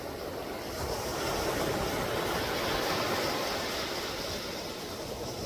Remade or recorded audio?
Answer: recorded